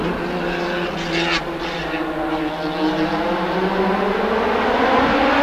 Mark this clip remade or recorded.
recorded